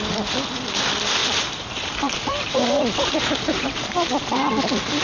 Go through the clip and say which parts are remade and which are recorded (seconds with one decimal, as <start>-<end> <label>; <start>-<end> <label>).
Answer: 0.0-1.2 recorded; 1.2-4.2 remade; 4.2-5.0 recorded